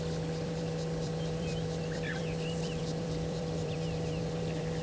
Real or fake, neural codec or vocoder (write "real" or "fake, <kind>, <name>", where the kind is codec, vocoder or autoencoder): fake, vocoder, BigVGAN v2